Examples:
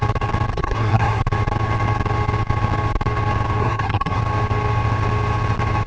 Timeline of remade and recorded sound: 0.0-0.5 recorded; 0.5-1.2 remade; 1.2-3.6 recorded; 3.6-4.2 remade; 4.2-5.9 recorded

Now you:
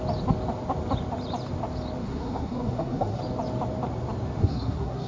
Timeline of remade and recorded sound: 0.0-2.0 recorded; 2.0-3.2 remade; 3.2-4.4 recorded; 4.4-5.1 remade